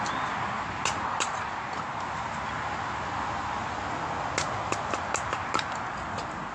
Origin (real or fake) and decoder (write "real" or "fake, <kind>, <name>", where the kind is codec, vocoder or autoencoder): real